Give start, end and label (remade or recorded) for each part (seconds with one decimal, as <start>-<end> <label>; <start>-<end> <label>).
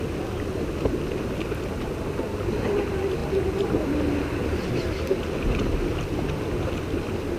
0.0-3.2 recorded; 3.2-4.7 remade; 4.7-7.4 recorded